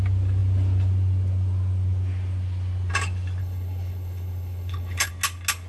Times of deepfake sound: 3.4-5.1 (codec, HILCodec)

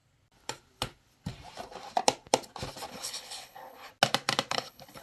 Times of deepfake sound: 2.9-3.9 (codec, HILCodec); 4.5-5.0

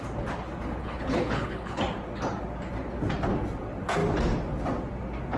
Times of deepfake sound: 0.8-1.8 (codec, HILCodec)

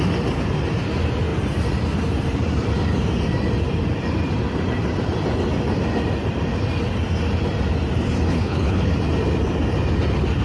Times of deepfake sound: 8.3-8.9 (codec, HILCodec)

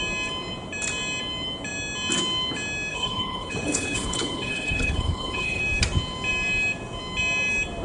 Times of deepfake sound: 2.9-5.6 (codec, HILCodec)